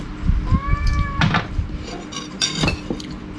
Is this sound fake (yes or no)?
no